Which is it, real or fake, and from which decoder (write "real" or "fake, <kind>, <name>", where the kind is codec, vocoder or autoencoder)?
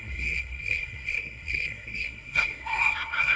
fake, codec, SNAC